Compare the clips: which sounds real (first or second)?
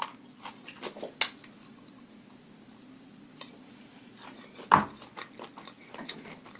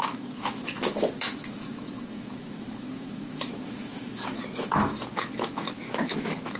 first